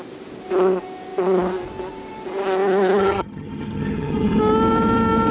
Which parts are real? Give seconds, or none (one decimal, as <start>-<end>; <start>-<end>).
0.0-3.0; 4.4-5.3